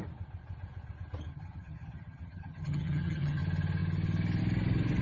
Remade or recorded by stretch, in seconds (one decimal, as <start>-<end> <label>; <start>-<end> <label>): 0.0-1.3 recorded; 1.3-3.4 remade; 3.4-5.0 recorded